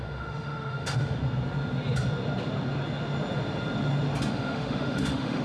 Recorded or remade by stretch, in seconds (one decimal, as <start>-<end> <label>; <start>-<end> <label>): 0.0-1.2 remade; 1.2-4.3 recorded; 4.3-5.4 remade